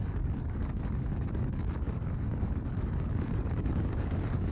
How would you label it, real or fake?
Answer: fake